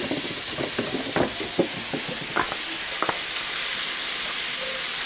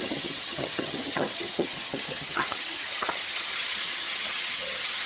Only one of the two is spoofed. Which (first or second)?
second